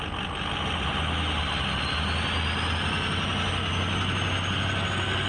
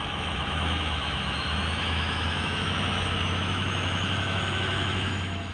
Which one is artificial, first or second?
second